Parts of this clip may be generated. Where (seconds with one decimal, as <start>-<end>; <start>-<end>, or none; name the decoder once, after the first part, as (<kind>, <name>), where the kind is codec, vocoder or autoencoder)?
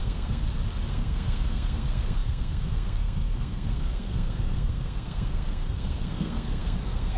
0.0-0.4 (codec, SNAC); 0.9-7.2